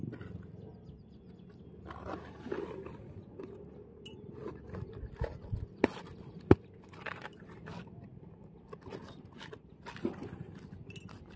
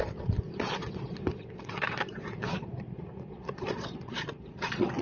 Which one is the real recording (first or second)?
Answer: first